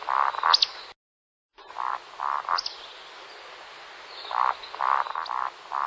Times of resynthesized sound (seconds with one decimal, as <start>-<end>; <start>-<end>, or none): none